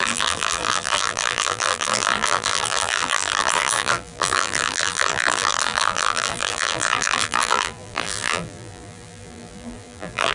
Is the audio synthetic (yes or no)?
yes